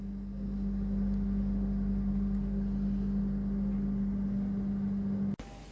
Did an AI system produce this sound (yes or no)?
no